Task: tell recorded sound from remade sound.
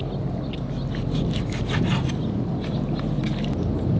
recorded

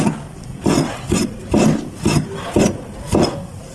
recorded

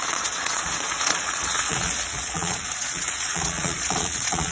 remade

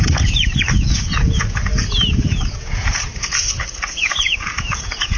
remade